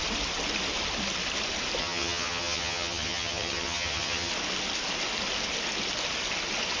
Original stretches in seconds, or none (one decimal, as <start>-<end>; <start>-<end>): 0.0-1.8; 4.3-6.8